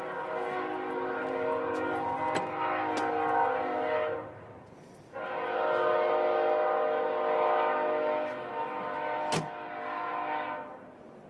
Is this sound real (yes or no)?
yes